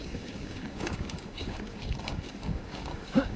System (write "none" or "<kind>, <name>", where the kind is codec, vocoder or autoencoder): codec, DAC